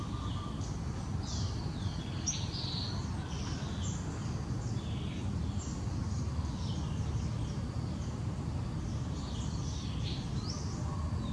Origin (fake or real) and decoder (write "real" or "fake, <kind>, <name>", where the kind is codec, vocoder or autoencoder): real